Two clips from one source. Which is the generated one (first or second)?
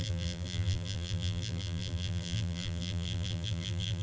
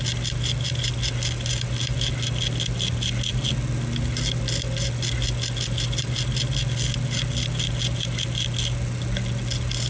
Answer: first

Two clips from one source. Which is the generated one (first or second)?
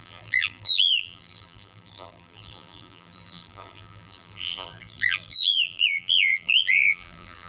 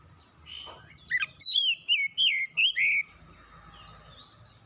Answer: first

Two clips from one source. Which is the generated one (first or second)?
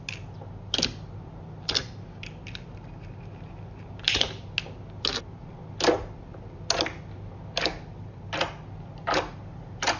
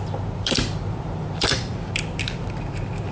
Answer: second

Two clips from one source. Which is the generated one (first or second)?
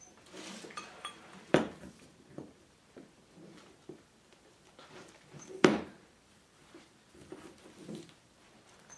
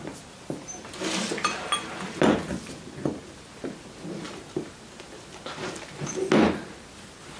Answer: first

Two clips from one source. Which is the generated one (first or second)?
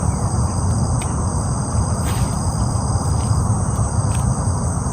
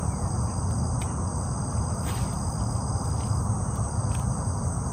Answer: first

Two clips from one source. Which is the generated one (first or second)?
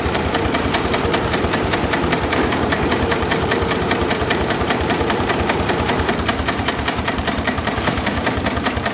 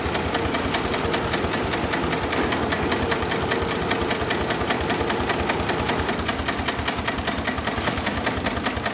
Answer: first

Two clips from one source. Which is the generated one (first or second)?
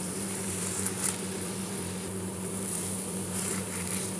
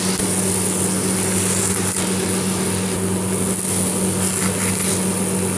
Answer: first